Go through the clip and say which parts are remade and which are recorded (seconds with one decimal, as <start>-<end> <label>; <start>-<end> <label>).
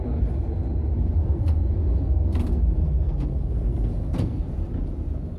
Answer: 0.0-1.2 recorded; 1.2-4.4 remade; 4.4-5.4 recorded